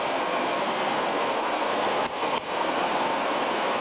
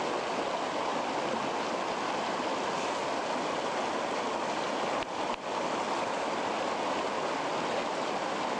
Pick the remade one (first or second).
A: first